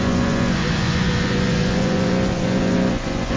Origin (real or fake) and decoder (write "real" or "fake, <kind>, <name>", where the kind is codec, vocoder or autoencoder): fake, vocoder, Vocos